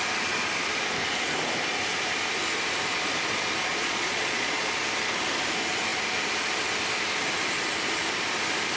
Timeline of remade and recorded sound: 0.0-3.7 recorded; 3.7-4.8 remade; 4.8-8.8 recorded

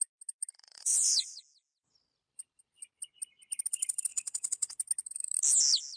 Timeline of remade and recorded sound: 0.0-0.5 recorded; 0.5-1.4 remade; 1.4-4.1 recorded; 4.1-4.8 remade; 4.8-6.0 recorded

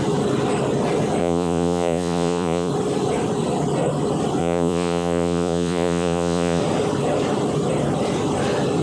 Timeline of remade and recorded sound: 0.0-1.2 recorded; 1.2-2.7 remade; 2.7-4.4 recorded; 4.4-6.6 remade; 6.6-8.8 recorded

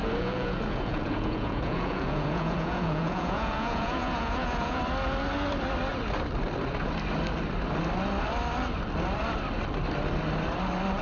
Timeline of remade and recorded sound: 0.0-4.8 remade; 4.8-11.0 recorded

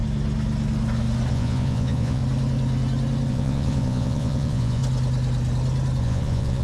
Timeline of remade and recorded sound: 0.0-1.3 recorded; 1.3-2.2 remade; 2.2-3.3 recorded; 3.3-4.8 remade; 4.8-6.0 recorded; 6.0-6.6 remade